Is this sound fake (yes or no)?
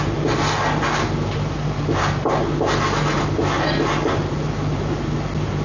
no